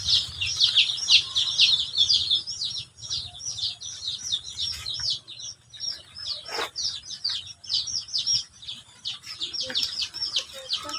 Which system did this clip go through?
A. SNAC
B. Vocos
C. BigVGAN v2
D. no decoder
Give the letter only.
D